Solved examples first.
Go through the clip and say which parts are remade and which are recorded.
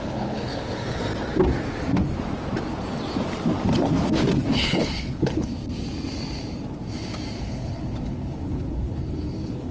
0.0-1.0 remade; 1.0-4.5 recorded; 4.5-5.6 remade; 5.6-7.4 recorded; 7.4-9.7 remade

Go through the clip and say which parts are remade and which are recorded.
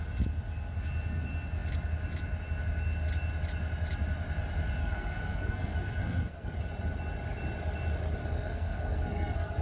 0.0-4.8 recorded; 4.8-6.6 remade; 6.6-8.2 recorded; 8.2-9.6 remade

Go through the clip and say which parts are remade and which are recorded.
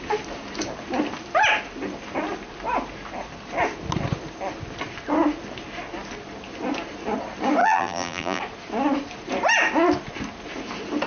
0.0-7.6 recorded; 7.6-8.4 remade; 8.4-11.1 recorded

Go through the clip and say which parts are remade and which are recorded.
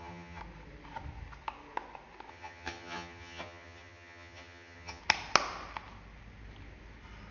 0.0-0.4 remade; 0.4-2.3 recorded; 2.3-5.0 remade; 5.0-7.3 recorded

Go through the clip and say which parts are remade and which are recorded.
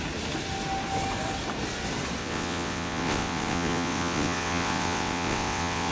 0.0-2.2 recorded; 2.2-5.9 remade